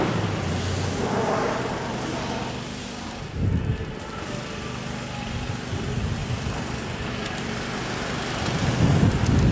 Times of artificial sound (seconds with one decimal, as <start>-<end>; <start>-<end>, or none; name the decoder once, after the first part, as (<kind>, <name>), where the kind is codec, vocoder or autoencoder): 6.2-7.4 (vocoder, BigVGAN v2)